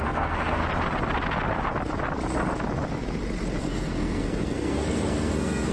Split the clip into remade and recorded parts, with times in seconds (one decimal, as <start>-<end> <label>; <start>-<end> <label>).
0.0-0.6 remade; 0.6-3.6 recorded; 3.6-5.7 remade

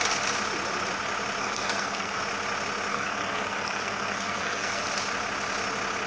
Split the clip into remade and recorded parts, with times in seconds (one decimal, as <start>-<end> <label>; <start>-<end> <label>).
0.0-1.4 recorded; 1.4-2.2 remade; 2.2-2.9 recorded; 2.9-4.8 remade; 4.8-6.1 recorded

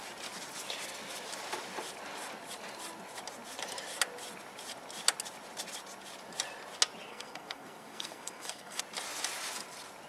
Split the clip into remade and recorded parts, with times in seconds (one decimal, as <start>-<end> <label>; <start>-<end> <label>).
0.0-7.1 recorded; 7.1-8.8 remade; 8.8-10.1 recorded

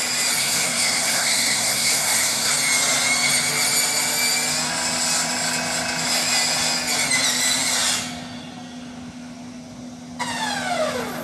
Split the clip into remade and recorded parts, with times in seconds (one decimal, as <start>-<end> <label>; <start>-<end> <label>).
0.0-0.4 recorded; 0.4-2.5 remade; 2.5-11.2 recorded

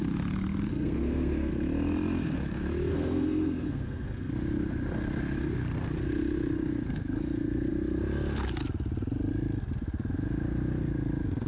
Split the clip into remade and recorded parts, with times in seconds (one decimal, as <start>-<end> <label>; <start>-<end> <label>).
0.0-0.7 recorded; 0.7-1.5 remade; 1.5-2.9 recorded; 2.9-4.3 remade; 4.3-11.5 recorded

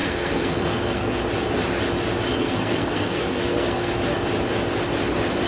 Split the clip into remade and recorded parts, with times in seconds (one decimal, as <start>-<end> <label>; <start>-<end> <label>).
0.0-1.2 remade; 1.2-2.4 recorded; 2.4-3.9 remade; 3.9-5.5 recorded

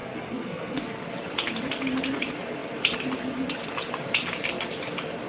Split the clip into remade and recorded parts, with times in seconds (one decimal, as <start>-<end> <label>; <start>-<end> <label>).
0.0-1.0 remade; 1.0-5.3 recorded